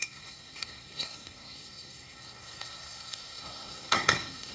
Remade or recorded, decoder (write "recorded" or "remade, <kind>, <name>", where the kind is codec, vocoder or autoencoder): remade, codec, SNAC